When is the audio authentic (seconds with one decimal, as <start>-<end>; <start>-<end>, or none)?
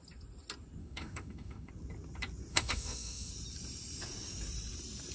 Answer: 0.0-0.8; 1.7-2.5; 3.3-5.1